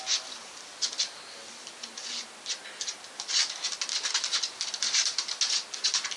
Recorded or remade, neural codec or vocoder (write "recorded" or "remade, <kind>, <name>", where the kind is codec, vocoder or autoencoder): recorded